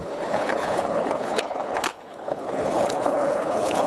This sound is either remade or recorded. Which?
remade